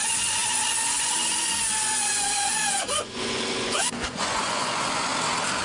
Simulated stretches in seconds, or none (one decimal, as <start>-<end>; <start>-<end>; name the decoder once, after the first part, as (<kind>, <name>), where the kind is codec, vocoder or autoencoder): 0.0-5.1 (vocoder, Vocos)